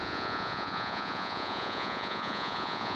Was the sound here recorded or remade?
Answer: remade